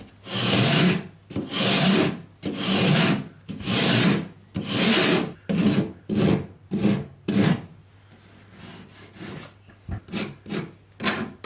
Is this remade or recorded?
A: recorded